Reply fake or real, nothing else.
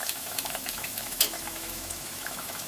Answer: fake